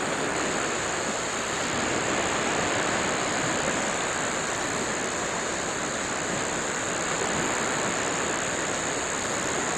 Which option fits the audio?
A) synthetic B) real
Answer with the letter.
B